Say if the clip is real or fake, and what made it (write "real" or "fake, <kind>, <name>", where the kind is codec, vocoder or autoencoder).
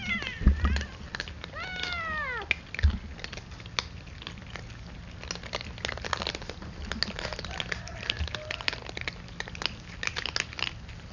real